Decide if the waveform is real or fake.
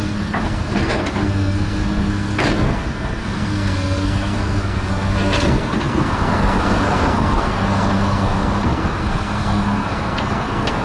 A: fake